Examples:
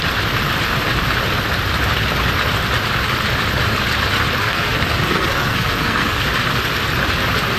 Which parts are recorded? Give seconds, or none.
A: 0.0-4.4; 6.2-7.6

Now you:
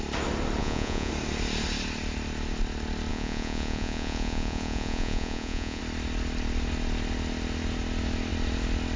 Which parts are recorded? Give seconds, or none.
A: 0.0-0.6; 1.1-3.1; 5.8-9.0

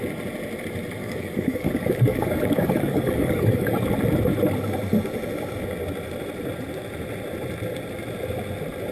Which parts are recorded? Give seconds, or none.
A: 0.0-1.0; 3.9-8.9

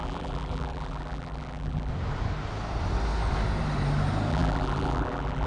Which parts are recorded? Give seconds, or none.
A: 1.9-4.3

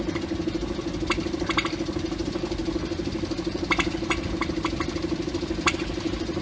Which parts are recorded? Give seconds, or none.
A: 0.0-6.4

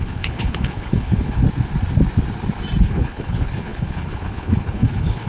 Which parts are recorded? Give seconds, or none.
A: 1.4-2.8